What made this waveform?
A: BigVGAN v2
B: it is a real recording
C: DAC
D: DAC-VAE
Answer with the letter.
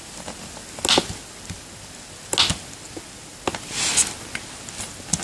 B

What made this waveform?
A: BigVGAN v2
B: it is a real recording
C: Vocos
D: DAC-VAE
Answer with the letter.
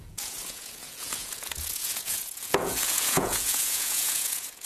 C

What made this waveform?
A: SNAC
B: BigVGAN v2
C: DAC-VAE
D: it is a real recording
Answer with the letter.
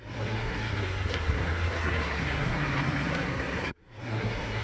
A